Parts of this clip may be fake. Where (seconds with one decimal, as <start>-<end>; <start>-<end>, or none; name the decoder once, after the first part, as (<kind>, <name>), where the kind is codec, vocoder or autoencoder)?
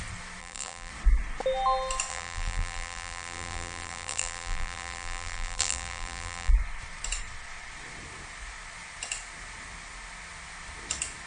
0.4-0.9 (vocoder, BigVGAN v2); 2.1-6.5